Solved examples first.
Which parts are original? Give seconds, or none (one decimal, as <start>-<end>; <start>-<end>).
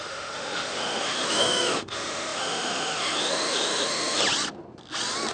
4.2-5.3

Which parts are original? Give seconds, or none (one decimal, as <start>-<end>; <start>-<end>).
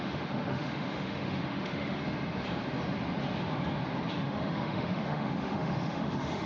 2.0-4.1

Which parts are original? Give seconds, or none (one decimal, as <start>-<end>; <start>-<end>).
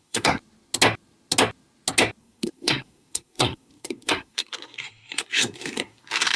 0.4-2.2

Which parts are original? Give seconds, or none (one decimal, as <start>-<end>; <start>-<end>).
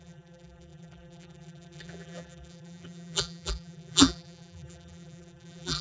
none